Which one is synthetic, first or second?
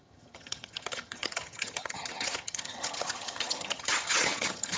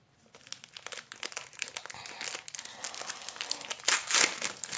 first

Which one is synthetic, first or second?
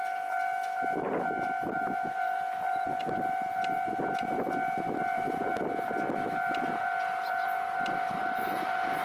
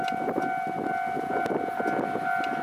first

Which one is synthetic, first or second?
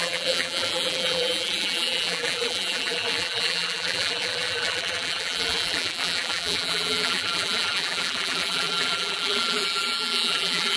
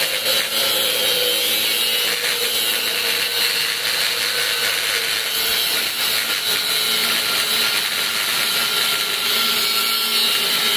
first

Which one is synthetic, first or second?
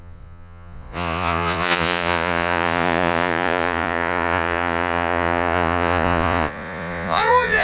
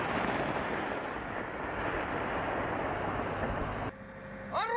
first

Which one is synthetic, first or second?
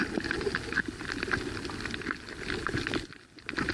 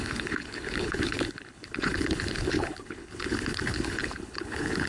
second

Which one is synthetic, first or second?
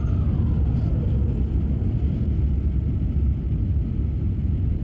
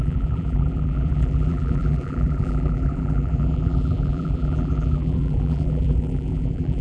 second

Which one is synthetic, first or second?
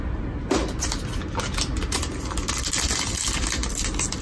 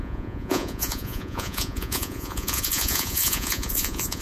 second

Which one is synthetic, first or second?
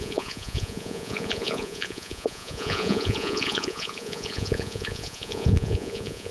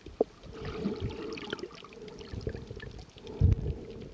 first